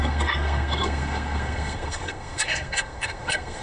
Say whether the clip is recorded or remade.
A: remade